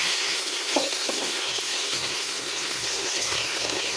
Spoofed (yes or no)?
yes